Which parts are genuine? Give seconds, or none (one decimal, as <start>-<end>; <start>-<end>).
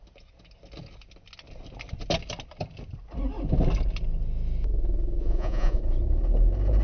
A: 0.0-5.2; 5.8-6.8